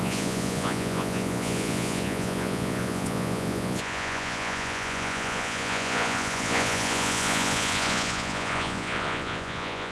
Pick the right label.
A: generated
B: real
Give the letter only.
A